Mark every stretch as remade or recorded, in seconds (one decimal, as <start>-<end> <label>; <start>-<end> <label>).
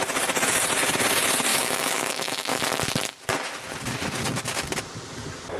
0.0-1.5 recorded; 1.5-2.6 remade; 2.6-5.6 recorded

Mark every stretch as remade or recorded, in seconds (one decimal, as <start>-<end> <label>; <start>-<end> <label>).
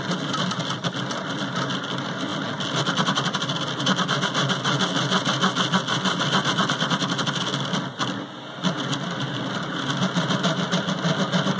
0.0-11.6 recorded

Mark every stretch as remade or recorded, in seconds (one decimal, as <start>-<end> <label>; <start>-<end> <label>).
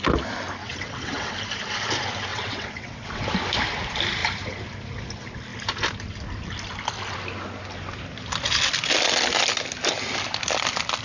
0.0-0.6 recorded; 0.6-1.3 remade; 1.3-2.3 recorded; 2.3-3.2 remade; 3.2-11.0 recorded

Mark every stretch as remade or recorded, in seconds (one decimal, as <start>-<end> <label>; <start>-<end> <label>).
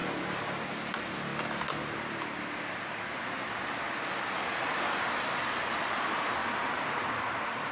0.0-7.7 recorded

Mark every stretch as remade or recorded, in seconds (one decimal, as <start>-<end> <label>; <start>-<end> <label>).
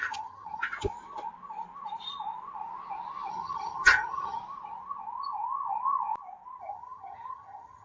0.0-0.6 remade; 0.6-3.3 recorded; 3.3-4.4 remade; 4.4-6.6 recorded; 6.6-7.8 remade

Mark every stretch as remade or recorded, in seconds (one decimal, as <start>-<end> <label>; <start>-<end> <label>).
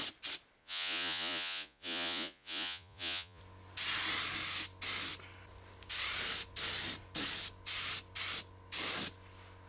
0.0-0.6 recorded; 0.6-3.4 remade; 3.4-9.7 recorded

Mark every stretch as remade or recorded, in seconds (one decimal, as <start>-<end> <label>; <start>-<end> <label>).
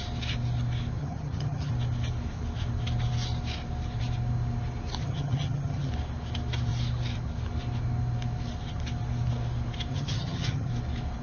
0.0-1.0 recorded; 1.0-1.7 remade; 1.7-5.0 recorded; 5.0-5.9 remade; 5.9-9.9 recorded; 9.9-10.7 remade; 10.7-11.2 recorded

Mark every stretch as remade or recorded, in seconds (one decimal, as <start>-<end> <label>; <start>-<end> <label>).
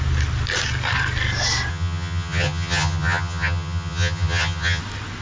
0.0-1.7 recorded; 1.7-4.8 remade; 4.8-5.2 recorded